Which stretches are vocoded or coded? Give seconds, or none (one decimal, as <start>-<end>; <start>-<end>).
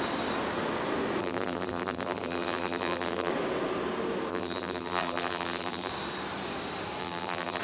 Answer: 1.2-3.3; 4.3-5.9; 7.0-7.6